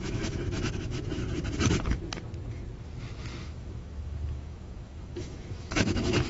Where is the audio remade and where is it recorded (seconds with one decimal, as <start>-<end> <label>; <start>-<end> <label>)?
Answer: 0.0-1.2 remade; 1.2-3.4 recorded; 3.4-6.3 remade